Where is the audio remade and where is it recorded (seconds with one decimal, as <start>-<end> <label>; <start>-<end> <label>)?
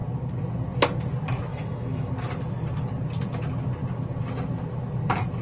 0.0-1.5 recorded; 1.5-2.1 remade; 2.1-5.4 recorded